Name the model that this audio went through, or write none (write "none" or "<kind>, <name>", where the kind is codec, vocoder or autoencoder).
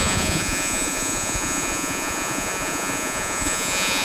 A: vocoder, Vocos